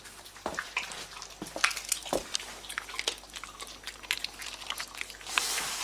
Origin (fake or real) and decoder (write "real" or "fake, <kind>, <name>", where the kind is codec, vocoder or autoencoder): real